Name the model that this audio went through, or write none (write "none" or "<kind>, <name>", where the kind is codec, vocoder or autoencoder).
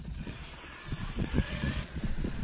vocoder, Vocos